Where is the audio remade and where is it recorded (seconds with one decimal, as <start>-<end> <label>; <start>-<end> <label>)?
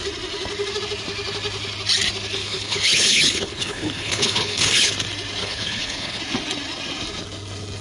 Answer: 0.0-2.4 recorded; 2.4-4.9 remade; 4.9-5.4 recorded; 5.4-6.2 remade; 6.2-7.8 recorded